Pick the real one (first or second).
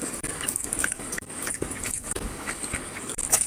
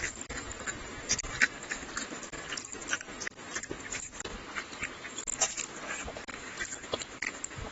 second